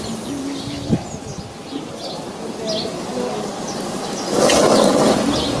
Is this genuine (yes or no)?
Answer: yes